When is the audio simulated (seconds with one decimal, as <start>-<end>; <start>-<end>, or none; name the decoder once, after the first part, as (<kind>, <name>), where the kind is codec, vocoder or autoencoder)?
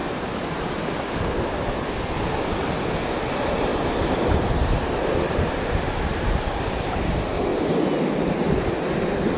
3.7-6.9 (vocoder, BigVGAN v2)